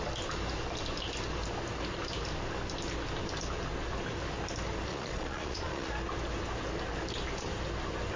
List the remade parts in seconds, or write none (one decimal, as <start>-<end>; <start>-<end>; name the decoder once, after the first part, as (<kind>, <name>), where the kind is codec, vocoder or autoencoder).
4.9-5.9 (vocoder, Vocos)

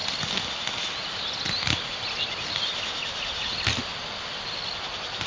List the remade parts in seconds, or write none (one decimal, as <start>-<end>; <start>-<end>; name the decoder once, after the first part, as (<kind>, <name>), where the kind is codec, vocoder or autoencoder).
none